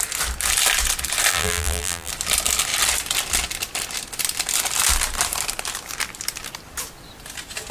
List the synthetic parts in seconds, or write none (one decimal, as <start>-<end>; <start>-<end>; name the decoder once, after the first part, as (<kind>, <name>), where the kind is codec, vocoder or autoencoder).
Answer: 1.3-2.1 (vocoder, BigVGAN v2)